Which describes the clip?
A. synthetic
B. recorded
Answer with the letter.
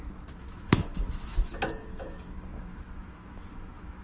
A